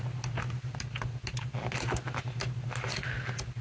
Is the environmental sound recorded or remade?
recorded